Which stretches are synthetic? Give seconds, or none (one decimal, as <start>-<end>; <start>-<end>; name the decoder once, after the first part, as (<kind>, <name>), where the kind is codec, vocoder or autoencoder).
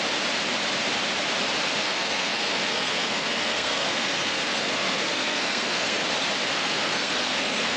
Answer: 1.8-6.0 (codec, SNAC); 6.5-7.8